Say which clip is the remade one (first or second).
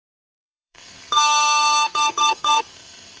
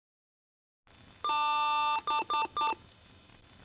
first